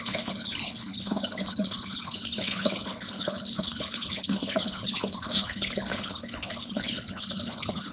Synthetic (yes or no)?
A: yes